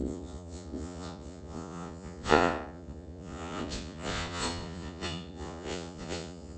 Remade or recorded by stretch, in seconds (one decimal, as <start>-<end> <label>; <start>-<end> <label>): 0.0-6.6 remade